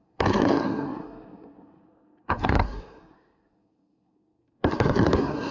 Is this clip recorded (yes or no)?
no